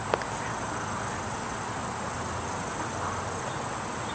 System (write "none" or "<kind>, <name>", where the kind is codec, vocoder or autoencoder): none